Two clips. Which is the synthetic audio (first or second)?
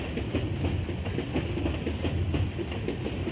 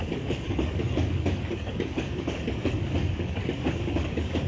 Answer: second